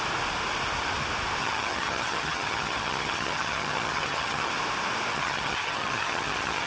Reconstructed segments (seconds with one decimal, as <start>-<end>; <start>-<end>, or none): 1.4-4.5; 5.1-6.7